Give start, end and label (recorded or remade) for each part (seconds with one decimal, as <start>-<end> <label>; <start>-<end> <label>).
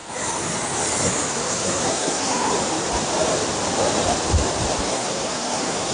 0.0-1.3 recorded; 1.3-2.5 remade; 2.5-4.8 recorded; 4.8-5.9 remade